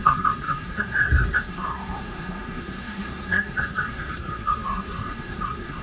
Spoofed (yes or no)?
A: yes